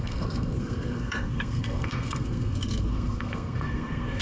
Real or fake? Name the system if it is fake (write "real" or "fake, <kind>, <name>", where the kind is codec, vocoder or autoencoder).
fake, codec, SNAC